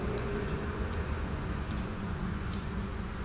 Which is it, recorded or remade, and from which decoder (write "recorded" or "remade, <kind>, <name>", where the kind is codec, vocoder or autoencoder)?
remade, vocoder, Vocos